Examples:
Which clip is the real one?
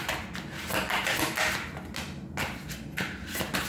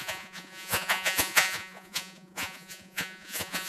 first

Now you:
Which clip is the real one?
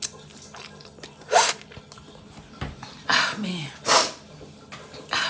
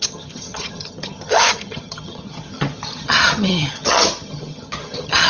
first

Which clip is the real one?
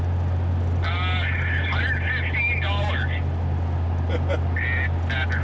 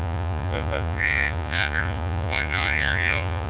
first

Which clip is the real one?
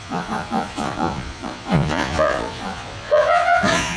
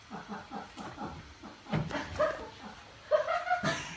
second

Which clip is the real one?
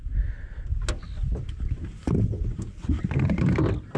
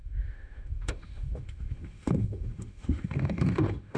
first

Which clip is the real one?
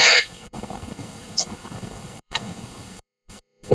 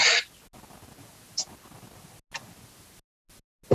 second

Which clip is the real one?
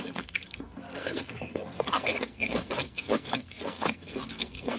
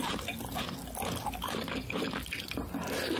second